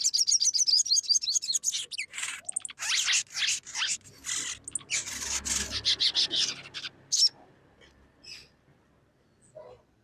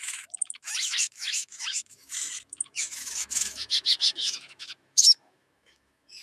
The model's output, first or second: second